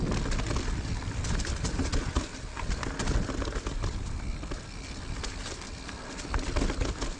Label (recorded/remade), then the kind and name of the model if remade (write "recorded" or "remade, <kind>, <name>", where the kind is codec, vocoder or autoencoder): recorded